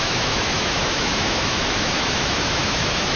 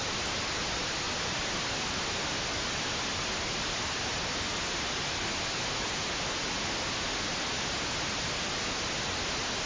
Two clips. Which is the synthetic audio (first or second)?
first